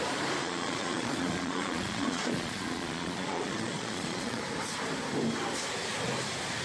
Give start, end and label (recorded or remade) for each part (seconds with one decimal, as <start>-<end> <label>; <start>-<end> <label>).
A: 0.0-0.4 recorded; 0.4-4.4 remade; 4.4-6.6 recorded